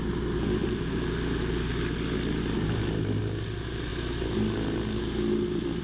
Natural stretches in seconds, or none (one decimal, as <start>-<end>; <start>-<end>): 0.0-5.8